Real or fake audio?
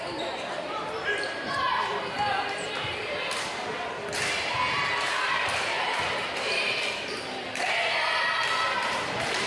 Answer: fake